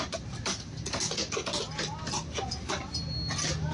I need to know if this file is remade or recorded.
recorded